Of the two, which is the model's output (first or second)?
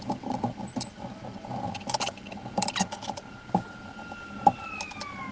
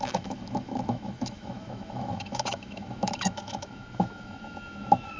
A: second